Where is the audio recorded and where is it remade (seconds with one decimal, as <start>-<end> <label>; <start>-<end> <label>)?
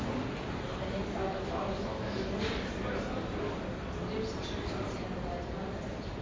0.0-1.2 recorded; 1.2-2.3 remade; 2.3-6.2 recorded